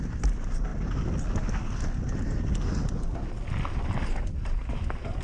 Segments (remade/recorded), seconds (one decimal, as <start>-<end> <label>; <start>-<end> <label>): 0.0-0.7 remade; 0.7-3.8 recorded; 3.8-5.2 remade